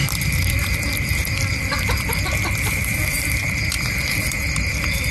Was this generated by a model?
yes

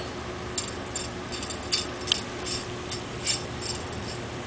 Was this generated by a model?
no